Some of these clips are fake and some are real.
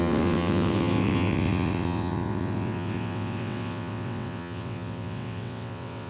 fake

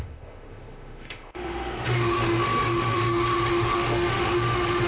fake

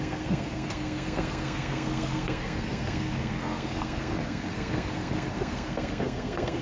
fake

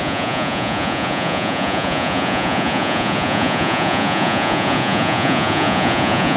fake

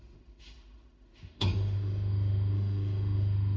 fake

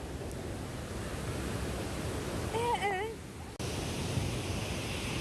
real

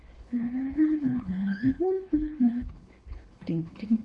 fake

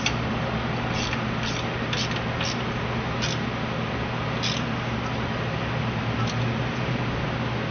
real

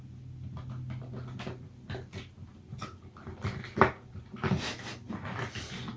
real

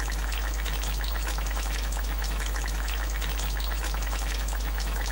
fake